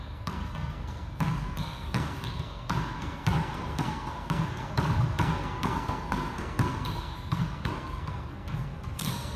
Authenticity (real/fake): fake